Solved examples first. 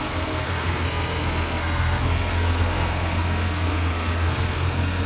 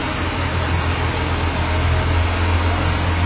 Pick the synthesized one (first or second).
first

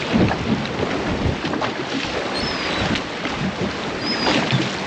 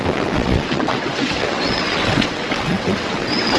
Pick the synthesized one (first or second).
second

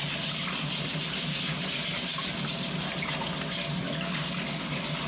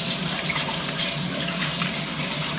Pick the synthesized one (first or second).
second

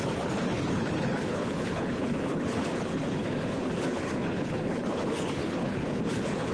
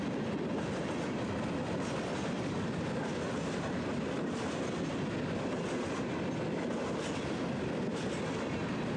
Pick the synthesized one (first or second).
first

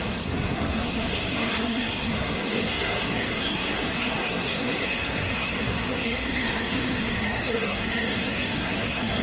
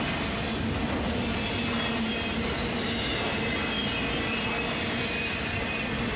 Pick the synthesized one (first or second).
first